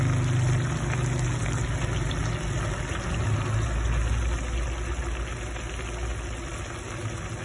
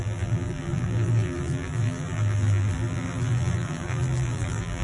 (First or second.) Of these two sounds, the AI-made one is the second